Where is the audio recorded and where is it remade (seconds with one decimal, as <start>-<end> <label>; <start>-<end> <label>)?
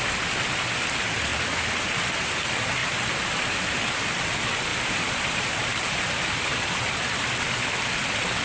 0.0-2.8 recorded; 2.8-3.7 remade; 3.7-4.7 recorded; 4.7-6.6 remade; 6.6-8.4 recorded